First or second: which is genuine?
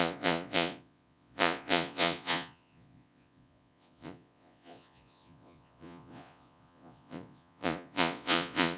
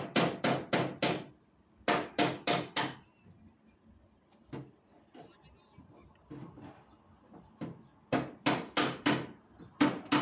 second